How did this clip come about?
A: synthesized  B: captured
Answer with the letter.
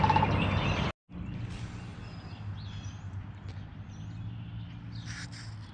B